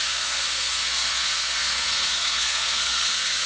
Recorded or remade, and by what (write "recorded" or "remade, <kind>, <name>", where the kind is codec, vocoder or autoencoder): remade, codec, SNAC